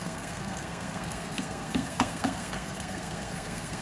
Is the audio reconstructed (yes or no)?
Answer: yes